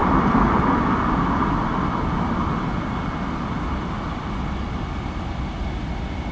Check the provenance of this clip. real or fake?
real